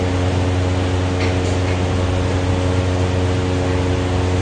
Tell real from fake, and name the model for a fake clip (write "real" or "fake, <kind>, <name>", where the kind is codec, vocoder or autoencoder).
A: real